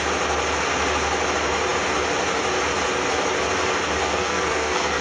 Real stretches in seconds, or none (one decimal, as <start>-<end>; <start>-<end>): 0.0-4.0